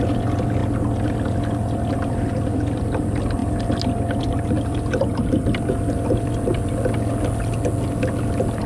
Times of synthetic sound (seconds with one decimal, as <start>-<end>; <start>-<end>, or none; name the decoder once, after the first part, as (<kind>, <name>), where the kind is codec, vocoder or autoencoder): none